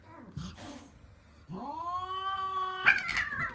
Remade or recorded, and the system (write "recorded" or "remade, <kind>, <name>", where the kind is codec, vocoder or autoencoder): recorded